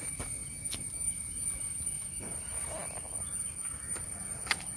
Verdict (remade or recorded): recorded